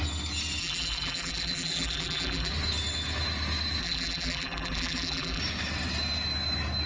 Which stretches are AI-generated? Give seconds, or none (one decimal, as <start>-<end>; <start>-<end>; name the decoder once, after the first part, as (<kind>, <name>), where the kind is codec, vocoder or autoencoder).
0.6-2.5 (vocoder, BigVGAN v2); 3.8-5.4